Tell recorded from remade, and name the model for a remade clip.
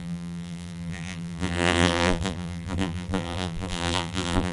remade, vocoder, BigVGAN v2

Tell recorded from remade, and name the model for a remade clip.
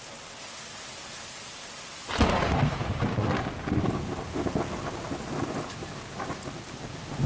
recorded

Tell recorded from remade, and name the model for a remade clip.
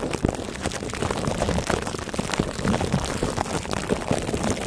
remade, vocoder, BigVGAN v2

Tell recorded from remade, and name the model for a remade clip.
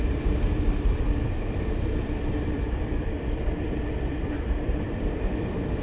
remade, vocoder, BigVGAN v2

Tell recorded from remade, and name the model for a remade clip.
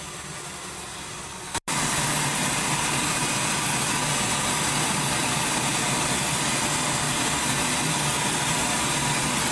recorded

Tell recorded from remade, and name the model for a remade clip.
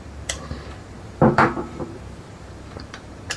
remade, vocoder, BigVGAN v2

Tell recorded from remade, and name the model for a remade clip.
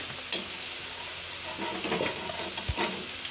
recorded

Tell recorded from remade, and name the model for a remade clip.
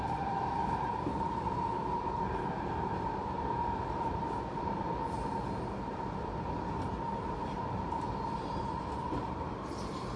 remade, vocoder, BigVGAN v2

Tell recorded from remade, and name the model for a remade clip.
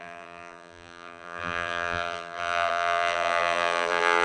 remade, vocoder, BigVGAN v2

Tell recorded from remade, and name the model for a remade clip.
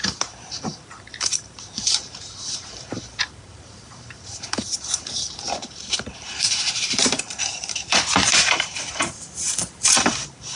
remade, vocoder, BigVGAN v2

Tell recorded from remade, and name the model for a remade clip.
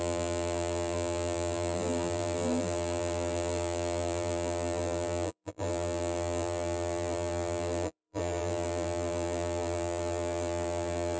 remade, vocoder, BigVGAN v2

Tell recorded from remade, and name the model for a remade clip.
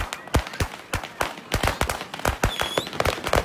recorded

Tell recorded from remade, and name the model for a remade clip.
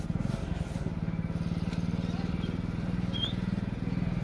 recorded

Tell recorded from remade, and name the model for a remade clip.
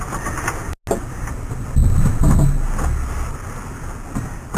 recorded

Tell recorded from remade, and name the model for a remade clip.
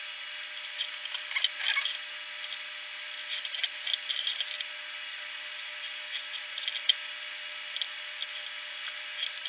recorded